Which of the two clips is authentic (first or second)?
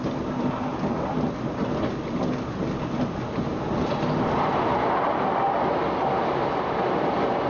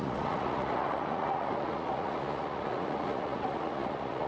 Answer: first